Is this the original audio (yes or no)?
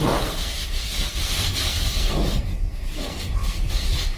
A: no